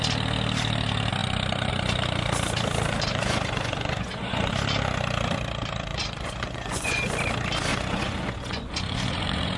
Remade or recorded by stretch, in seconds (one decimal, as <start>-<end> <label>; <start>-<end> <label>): 0.0-3.1 recorded; 3.1-4.5 remade; 4.5-5.9 recorded; 5.9-7.1 remade; 7.1-7.7 recorded; 7.7-9.6 remade

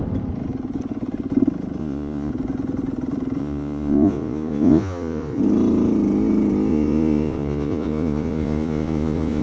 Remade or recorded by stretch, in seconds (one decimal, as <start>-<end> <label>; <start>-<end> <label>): 0.0-1.8 recorded; 1.8-2.3 remade; 2.3-3.4 recorded; 3.4-5.4 remade; 5.4-6.7 recorded; 6.7-9.4 remade